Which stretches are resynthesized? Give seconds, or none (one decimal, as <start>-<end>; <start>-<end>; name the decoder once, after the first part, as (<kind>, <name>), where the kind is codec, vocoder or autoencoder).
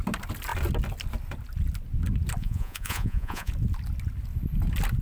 2.4-3.5 (vocoder, Vocos)